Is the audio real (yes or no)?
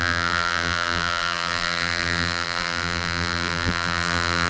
no